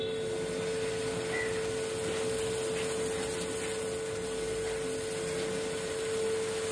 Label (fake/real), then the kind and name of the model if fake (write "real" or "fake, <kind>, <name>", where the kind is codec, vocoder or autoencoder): real